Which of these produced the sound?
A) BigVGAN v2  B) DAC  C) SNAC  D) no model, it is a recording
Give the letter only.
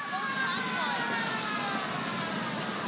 D